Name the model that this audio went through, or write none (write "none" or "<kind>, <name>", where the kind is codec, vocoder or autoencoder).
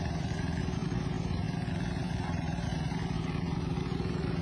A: vocoder, BigVGAN v2